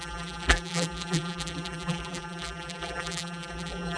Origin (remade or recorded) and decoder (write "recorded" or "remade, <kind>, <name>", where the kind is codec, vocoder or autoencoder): remade, vocoder, BigVGAN v2